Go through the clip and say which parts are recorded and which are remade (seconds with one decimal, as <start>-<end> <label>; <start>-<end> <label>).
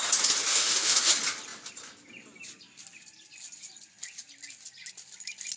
0.0-0.5 recorded; 0.5-1.1 remade; 1.1-5.6 recorded